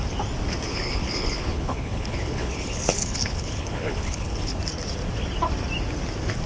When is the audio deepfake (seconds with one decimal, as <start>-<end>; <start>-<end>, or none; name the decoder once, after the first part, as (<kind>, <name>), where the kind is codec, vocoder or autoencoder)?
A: 0.7-4.6 (codec, HILCodec)